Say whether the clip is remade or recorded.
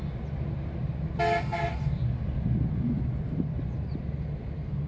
recorded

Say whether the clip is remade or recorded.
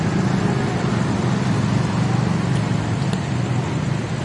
recorded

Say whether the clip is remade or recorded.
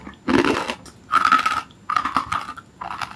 recorded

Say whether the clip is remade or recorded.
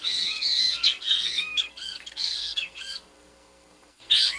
remade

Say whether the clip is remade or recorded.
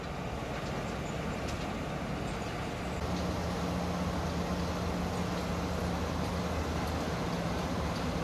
recorded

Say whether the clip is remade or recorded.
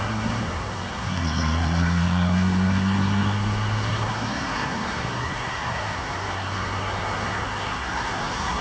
remade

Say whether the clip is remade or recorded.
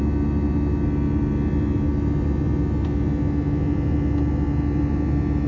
recorded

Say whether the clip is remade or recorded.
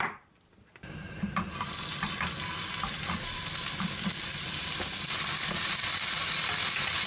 recorded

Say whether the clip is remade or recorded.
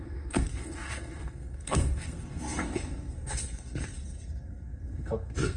remade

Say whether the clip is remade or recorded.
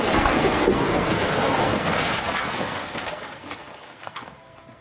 remade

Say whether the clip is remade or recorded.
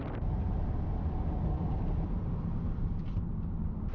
recorded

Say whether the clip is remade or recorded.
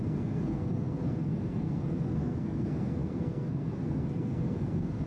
remade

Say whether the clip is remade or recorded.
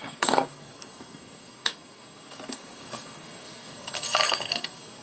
remade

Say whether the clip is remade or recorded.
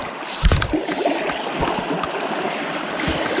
recorded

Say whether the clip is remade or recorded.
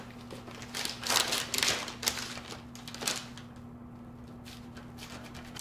recorded